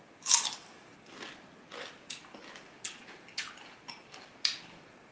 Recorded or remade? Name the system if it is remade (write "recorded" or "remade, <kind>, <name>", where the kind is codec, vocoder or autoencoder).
recorded